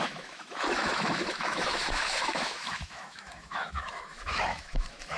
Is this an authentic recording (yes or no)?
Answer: no